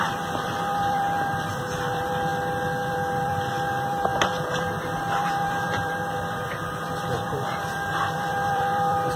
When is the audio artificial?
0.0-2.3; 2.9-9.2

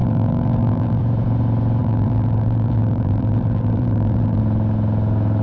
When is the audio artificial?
0.0-1.0; 1.8-4.4

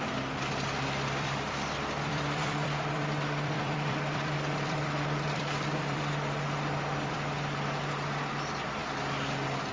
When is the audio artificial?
0.0-9.7

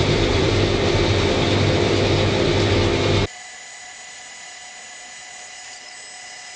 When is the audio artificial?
0.0-0.5

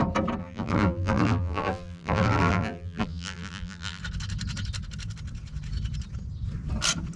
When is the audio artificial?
0.4-4.0

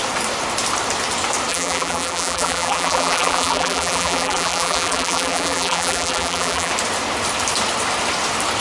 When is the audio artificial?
1.5-6.7

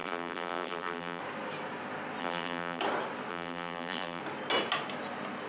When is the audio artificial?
0.0-1.2; 2.2-2.8; 3.3-4.2

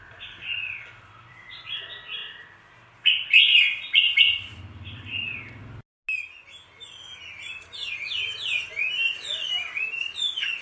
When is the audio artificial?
0.0-5.6